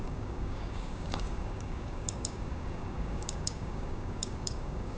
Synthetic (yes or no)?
yes